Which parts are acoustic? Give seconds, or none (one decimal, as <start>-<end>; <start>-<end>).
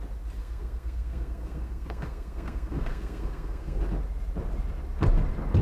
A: 0.0-0.4; 3.8-5.6